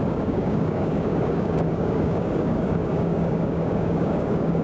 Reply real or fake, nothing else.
fake